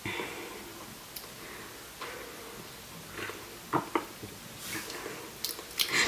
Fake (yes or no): no